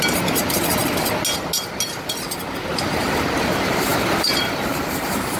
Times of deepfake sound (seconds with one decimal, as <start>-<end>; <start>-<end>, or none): 0.0-0.8; 2.7-5.4